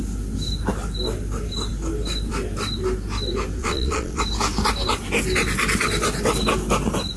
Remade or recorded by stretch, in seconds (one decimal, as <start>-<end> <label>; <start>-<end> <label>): 0.0-3.6 recorded; 3.6-4.2 remade; 4.2-7.2 recorded